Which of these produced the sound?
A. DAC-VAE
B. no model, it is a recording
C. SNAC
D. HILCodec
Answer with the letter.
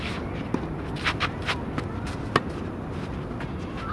B